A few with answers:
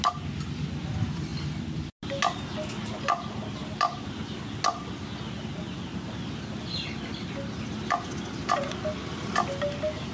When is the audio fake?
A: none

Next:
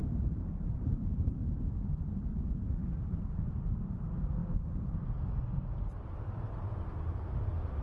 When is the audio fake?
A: 0.0-1.4 (vocoder, BigVGAN v2); 2.8-3.5

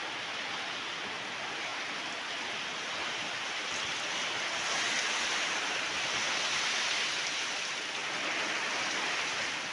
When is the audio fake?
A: none

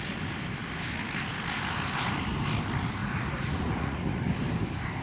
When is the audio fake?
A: 3.0-4.2 (vocoder, Vocos)

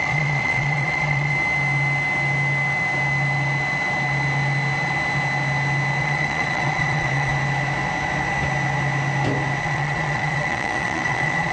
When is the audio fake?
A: 0.0-1.3 (vocoder, Vocos); 6.0-7.3; 9.6-11.5